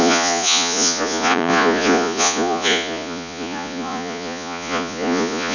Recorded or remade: remade